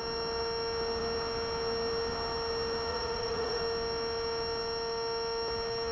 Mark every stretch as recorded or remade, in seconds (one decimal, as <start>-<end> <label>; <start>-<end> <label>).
0.0-2.9 recorded; 2.9-3.6 remade; 3.6-5.9 recorded